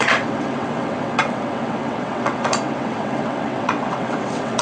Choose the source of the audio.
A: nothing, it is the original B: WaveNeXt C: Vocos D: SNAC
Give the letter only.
B